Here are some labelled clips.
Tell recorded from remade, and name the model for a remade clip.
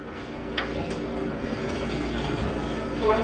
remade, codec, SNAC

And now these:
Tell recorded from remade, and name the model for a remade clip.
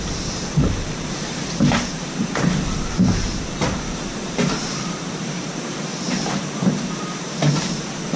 remade, vocoder, BigVGAN v2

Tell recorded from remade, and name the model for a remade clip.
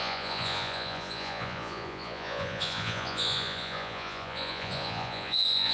remade, vocoder, Vocos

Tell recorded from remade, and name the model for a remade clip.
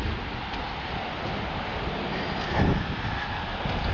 recorded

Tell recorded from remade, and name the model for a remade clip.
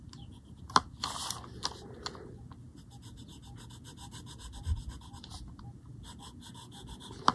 recorded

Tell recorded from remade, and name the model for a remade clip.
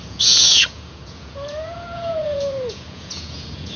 remade, vocoder, Vocos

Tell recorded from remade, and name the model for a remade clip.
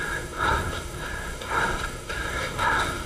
remade, codec, SNAC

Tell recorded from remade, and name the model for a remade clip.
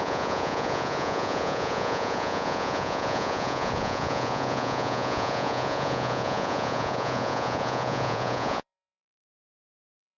remade, vocoder, Vocos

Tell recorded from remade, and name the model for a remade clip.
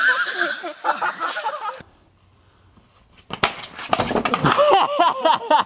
recorded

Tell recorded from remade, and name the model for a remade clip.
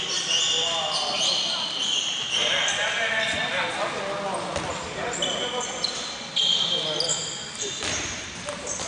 recorded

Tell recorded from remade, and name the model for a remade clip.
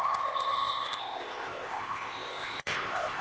remade, codec, ZipCodec